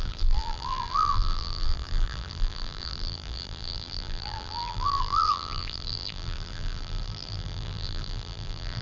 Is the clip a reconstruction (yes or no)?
yes